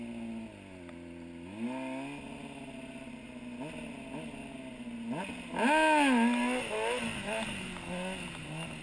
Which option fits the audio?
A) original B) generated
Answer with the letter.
A